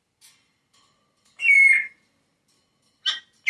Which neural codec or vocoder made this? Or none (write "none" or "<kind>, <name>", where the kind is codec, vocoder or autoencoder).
none